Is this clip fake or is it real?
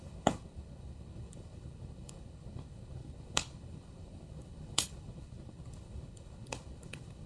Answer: fake